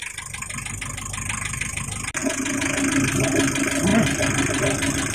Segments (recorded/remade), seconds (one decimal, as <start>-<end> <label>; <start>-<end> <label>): 0.0-2.2 recorded; 2.2-2.8 remade; 2.8-5.1 recorded